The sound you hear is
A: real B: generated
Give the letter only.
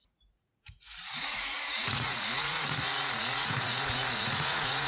B